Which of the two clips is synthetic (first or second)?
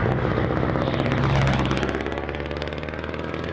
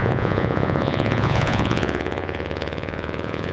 second